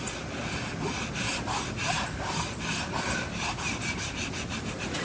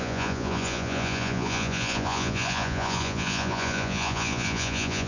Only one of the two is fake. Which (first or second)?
second